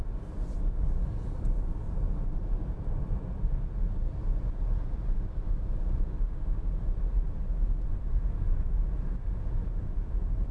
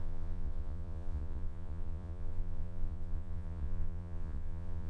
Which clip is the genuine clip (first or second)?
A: first